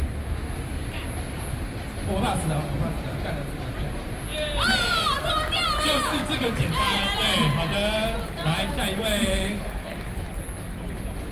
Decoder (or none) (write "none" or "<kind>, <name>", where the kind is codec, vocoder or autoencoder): none